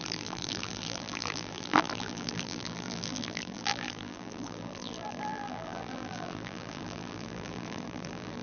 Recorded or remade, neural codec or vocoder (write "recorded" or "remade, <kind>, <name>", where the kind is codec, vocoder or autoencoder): remade, vocoder, BigVGAN v2